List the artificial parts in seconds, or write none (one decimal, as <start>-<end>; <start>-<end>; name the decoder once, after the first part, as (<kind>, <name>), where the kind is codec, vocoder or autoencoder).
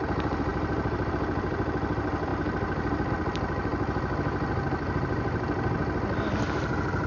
0.0-0.5 (vocoder, BigVGAN v2); 1.1-3.7; 6.2-7.1